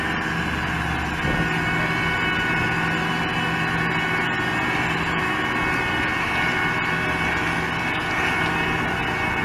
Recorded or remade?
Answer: recorded